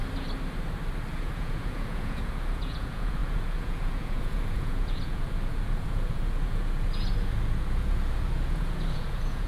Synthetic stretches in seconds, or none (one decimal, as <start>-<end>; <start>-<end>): 1.1-9.5